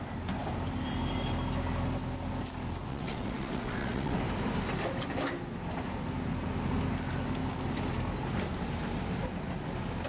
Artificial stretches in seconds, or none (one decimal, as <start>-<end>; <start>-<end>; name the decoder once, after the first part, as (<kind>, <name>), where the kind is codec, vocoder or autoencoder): 2.9-4.2 (vocoder, WaveNeXt)